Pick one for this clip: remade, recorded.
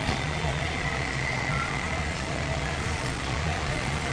remade